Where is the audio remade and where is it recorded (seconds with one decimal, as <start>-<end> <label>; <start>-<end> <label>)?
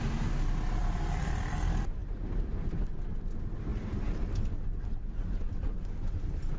0.0-0.8 recorded; 0.8-1.5 remade; 1.5-6.6 recorded